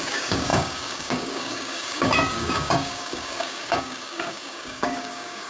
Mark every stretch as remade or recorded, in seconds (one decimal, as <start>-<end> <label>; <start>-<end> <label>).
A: 0.0-5.5 remade